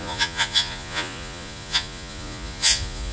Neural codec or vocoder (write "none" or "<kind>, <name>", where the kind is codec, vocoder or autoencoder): vocoder, Vocos